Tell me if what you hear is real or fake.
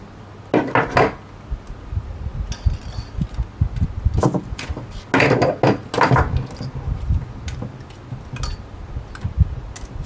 real